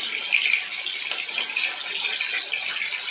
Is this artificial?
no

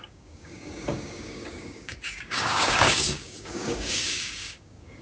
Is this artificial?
yes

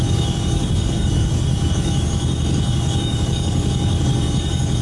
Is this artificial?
yes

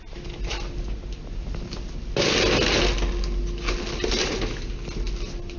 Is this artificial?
no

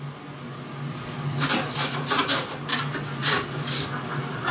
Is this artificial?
no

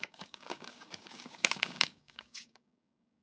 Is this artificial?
yes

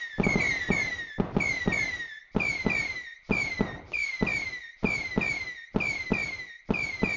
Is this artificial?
no